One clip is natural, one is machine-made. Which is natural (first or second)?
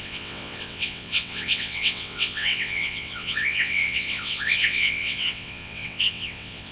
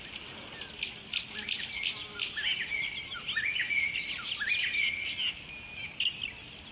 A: second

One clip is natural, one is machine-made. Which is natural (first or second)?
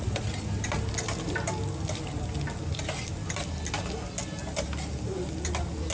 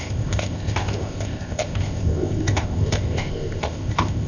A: first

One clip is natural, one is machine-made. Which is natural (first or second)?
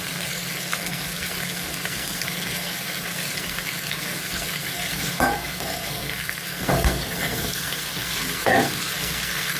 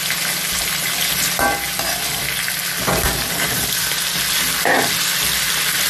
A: second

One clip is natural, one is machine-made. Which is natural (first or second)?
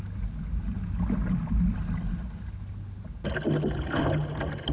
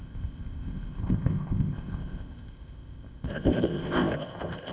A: first